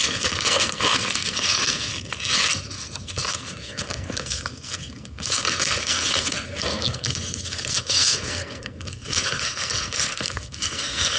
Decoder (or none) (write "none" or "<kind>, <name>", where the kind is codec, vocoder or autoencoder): codec, SNAC